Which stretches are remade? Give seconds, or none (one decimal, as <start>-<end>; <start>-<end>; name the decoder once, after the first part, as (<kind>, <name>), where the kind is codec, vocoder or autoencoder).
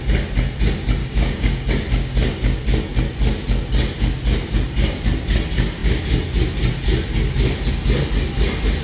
1.0-1.7 (codec, DAC)